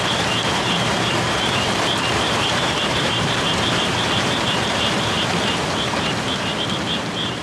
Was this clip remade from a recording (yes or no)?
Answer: yes